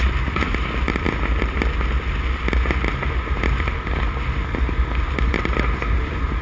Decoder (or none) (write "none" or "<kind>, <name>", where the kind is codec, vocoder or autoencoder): none